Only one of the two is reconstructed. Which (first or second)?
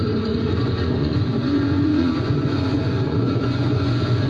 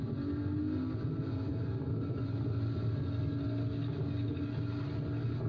first